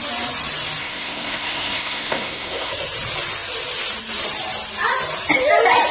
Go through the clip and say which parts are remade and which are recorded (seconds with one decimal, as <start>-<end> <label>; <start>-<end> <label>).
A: 0.0-0.8 recorded; 0.8-2.7 remade; 2.7-5.9 recorded